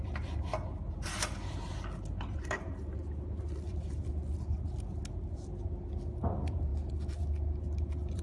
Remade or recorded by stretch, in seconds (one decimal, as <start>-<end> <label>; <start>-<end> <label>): 0.0-8.2 recorded